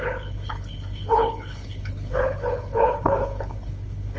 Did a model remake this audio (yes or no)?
yes